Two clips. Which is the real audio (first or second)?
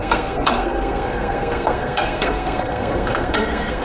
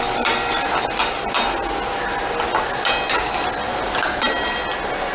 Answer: second